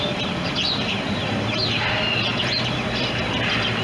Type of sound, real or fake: real